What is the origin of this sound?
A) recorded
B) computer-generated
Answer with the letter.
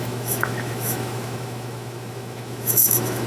B